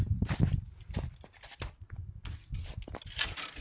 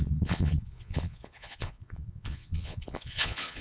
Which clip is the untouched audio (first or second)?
first